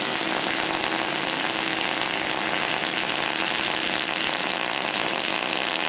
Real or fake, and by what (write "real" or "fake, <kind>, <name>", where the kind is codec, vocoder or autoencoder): real